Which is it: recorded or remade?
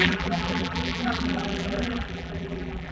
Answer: remade